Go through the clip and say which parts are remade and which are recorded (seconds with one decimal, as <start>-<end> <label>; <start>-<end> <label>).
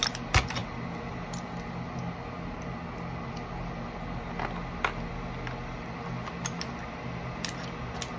0.0-8.2 recorded